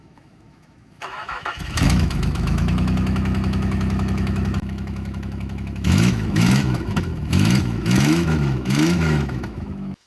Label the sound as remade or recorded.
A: remade